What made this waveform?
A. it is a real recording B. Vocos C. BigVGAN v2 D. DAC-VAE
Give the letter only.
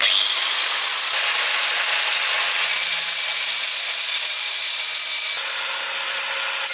A